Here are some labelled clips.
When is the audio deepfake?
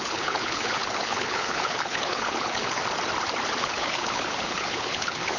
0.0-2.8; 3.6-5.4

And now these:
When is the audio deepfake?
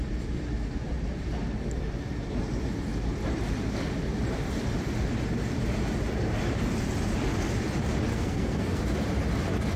8.1-8.8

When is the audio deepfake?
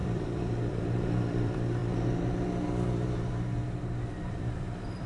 0.0-1.8; 4.1-5.1